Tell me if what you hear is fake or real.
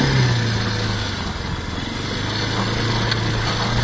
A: real